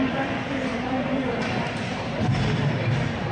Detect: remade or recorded remade